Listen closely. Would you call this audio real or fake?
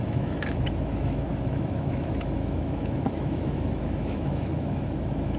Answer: fake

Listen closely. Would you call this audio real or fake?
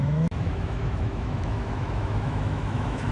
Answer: fake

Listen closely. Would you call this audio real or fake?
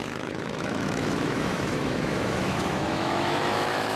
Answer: fake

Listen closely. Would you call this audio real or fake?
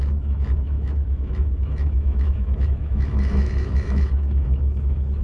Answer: fake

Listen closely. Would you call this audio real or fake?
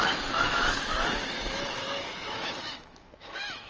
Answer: fake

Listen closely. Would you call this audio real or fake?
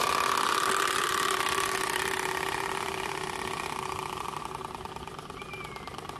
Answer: real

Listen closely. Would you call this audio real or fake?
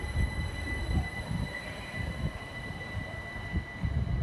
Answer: real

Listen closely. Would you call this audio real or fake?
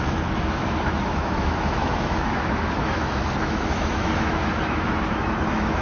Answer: fake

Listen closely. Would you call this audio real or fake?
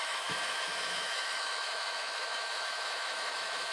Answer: fake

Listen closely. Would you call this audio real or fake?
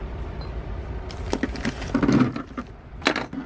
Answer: real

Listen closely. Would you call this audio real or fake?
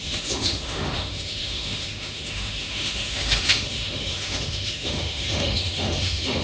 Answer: fake